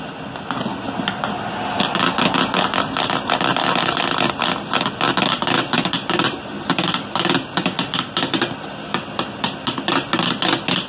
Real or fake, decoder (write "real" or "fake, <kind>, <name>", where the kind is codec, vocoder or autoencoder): real